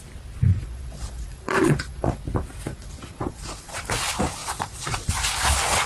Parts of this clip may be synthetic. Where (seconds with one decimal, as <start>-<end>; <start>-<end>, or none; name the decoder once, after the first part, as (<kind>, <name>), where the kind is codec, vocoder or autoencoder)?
0.5-2.2 (vocoder, Vocos); 2.7-3.8; 4.4-5.1

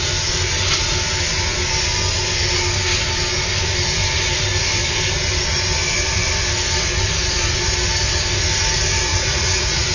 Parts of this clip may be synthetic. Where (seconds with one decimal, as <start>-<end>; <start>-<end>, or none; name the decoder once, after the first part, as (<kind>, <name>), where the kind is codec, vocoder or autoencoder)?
9.1-9.9 (vocoder, Vocos)

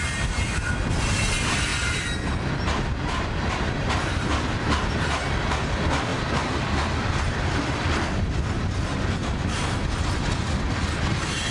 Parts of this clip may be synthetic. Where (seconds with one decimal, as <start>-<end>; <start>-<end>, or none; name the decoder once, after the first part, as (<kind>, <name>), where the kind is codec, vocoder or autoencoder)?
none

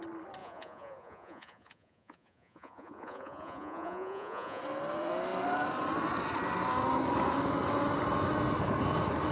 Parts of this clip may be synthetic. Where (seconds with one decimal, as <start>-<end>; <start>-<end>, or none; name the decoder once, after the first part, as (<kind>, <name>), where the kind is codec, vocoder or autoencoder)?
0.4-4.6 (vocoder, Vocos)

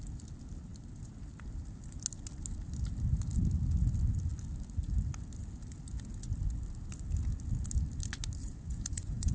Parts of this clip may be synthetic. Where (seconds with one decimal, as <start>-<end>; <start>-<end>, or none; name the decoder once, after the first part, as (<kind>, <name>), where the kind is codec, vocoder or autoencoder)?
8.4-9.3 (vocoder, Vocos)

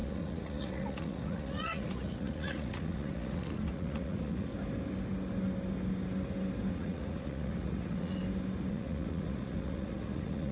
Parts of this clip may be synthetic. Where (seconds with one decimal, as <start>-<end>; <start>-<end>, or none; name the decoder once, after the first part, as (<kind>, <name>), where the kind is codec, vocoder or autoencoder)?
0.0-4.5 (vocoder, Vocos); 6.7-8.2; 8.7-10.5